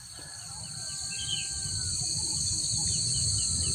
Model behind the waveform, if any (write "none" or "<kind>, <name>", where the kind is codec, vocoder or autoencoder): none